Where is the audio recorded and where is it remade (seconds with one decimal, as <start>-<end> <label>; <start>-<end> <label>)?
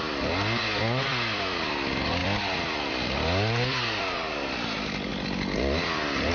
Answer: 0.0-5.1 remade; 5.1-6.3 recorded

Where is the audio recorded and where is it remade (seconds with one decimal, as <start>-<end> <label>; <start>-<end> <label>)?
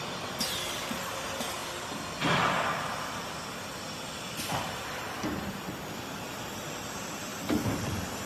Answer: 0.0-1.6 remade; 1.6-4.8 recorded; 4.8-8.3 remade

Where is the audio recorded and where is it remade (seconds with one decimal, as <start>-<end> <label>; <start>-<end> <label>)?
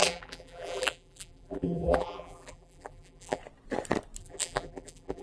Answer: 0.0-3.4 remade; 3.4-4.2 recorded; 4.2-5.2 remade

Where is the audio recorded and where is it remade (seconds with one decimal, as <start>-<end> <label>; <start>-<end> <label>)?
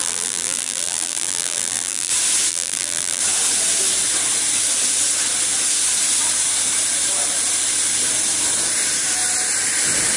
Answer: 0.0-2.1 remade; 2.1-2.5 recorded; 2.5-3.2 remade; 3.2-10.2 recorded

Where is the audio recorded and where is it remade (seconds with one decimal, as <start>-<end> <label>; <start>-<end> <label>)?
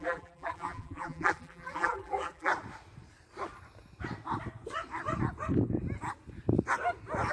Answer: 0.0-2.5 remade; 2.5-7.3 recorded